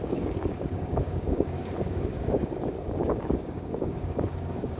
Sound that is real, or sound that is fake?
fake